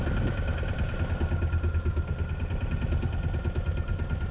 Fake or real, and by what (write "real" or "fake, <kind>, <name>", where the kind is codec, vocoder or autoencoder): real